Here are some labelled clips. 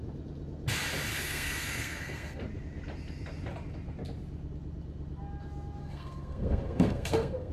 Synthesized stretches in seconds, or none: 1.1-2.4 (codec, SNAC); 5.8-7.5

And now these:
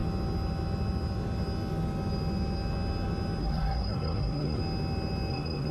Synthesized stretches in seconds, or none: 3.4-4.6 (codec, SNAC); 5.3-5.7

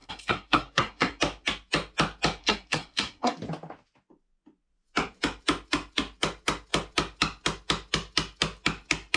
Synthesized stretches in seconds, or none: 0.0-1.2 (codec, SNAC); 2.4-3.4

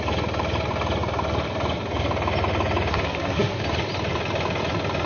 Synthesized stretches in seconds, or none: 2.9-3.6 (codec, SNAC)

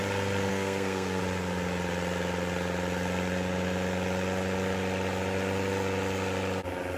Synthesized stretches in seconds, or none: 0.5-1.2 (codec, SNAC)